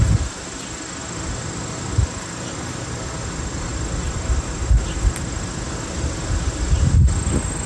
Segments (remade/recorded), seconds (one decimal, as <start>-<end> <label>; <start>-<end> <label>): 0.0-7.7 recorded